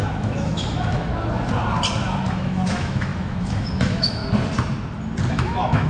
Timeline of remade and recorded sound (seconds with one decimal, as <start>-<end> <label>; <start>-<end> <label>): 0.0-1.1 remade; 1.1-2.3 recorded; 2.3-4.2 remade; 4.2-5.3 recorded; 5.3-5.9 remade